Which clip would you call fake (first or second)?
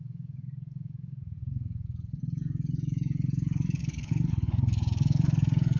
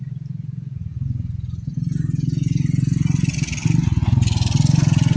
first